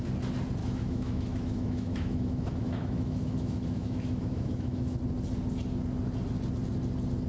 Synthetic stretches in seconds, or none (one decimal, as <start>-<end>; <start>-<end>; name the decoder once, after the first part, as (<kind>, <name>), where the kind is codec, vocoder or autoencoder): 0.6-5.0 (autoencoder, DAC-VAE)

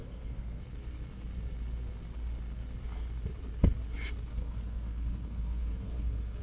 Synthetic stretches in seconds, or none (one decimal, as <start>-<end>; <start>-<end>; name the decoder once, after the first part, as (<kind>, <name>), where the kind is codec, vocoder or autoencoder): 0.0-0.6 (codec, SNAC); 4.3-6.4